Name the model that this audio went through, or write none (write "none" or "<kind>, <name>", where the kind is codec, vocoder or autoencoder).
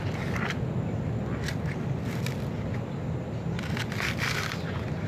none